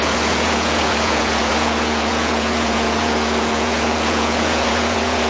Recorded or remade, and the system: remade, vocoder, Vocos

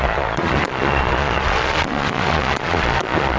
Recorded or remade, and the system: remade, vocoder, Vocos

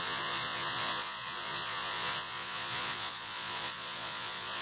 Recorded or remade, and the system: remade, vocoder, Vocos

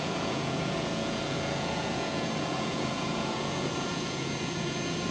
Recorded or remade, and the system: remade, vocoder, Vocos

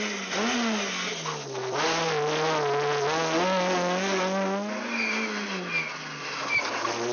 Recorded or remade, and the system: recorded